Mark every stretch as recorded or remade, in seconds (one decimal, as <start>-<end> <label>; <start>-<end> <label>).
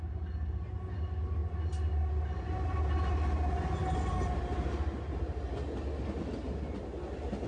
0.0-7.5 recorded